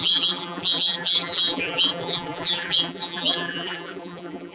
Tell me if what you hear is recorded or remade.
remade